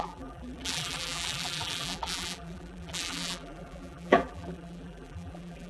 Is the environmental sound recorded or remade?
remade